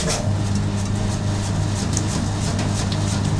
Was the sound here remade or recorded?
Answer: recorded